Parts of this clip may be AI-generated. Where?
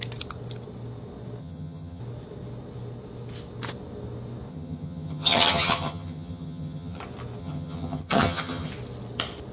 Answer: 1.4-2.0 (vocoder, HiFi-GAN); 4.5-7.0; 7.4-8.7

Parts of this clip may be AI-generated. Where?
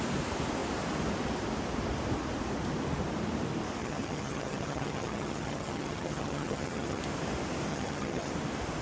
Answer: 3.8-7.0 (vocoder, HiFi-GAN); 7.7-8.3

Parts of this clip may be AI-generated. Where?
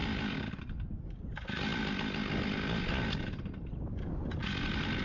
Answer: none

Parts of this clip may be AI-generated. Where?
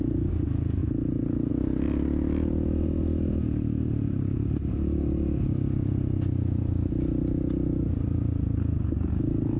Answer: none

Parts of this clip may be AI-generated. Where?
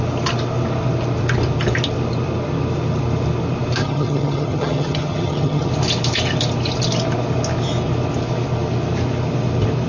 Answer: 3.8-5.7 (vocoder, HiFi-GAN)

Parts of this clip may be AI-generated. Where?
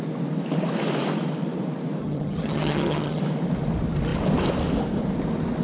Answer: 2.0-3.2 (vocoder, HiFi-GAN)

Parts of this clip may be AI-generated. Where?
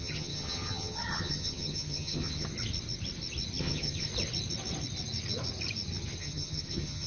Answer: 0.0-2.5 (vocoder, HiFi-GAN); 3.6-4.1; 6.2-7.1